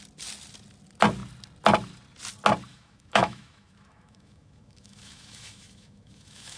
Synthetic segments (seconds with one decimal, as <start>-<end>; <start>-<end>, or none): 2.7-6.6